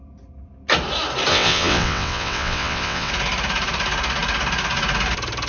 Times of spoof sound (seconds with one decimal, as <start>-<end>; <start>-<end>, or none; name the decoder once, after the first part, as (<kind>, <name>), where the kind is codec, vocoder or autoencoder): 1.3-3.1 (vocoder, WaveNeXt)